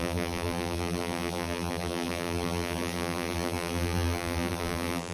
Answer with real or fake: fake